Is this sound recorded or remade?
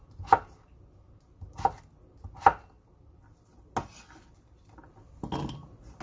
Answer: recorded